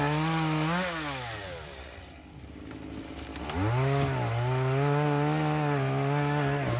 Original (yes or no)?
yes